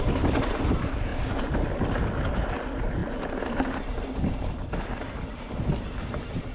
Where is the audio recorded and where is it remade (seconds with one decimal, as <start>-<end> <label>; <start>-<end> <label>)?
0.0-6.5 recorded